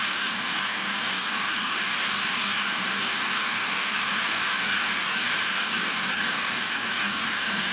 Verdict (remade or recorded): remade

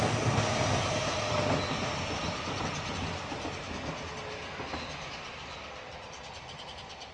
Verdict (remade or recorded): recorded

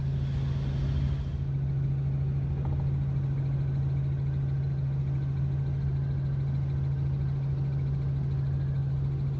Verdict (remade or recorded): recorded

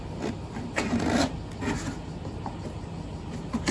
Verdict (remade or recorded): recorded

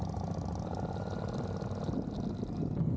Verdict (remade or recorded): recorded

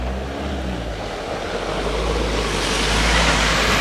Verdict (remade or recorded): recorded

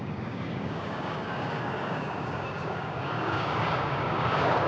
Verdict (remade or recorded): remade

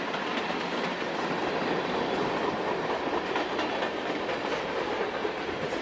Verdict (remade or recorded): recorded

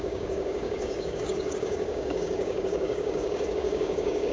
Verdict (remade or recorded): remade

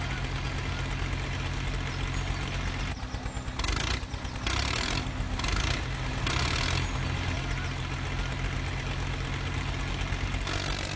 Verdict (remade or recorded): recorded